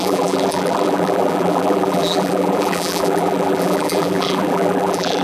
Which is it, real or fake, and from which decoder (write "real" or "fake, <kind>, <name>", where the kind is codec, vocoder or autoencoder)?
fake, vocoder, BigVGAN v2